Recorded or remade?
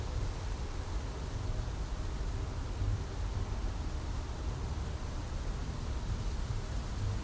recorded